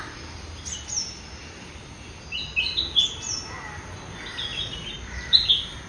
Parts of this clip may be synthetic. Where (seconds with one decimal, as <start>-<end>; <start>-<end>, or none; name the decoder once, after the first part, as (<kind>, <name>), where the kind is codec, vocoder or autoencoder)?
4.5-5.5 (vocoder, BigVGAN v2)